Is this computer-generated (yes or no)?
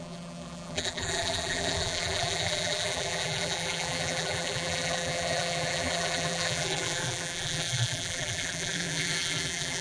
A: yes